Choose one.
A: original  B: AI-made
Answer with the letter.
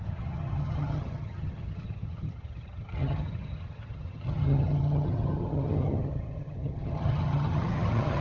B